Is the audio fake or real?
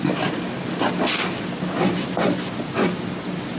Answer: real